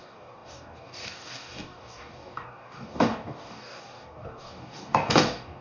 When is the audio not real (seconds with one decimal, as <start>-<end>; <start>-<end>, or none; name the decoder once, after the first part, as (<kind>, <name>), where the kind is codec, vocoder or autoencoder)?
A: 0.0-5.6 (codec, DAC)